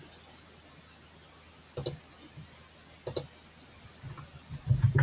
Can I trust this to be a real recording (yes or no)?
yes